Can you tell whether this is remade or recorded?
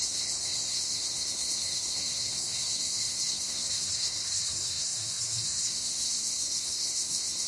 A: remade